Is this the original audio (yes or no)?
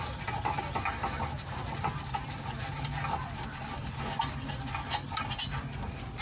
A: yes